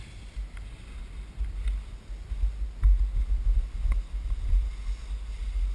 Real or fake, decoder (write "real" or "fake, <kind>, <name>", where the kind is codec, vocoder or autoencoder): real